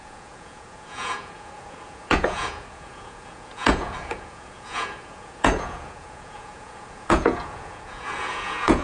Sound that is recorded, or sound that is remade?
remade